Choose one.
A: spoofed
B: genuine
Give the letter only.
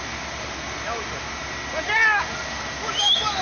B